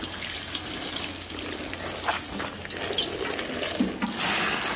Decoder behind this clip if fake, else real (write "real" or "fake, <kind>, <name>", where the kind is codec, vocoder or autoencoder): real